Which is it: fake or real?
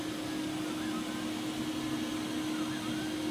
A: real